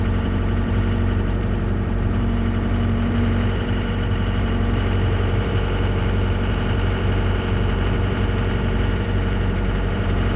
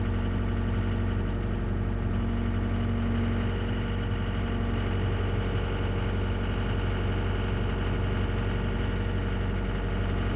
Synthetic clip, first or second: first